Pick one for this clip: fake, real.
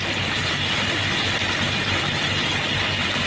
real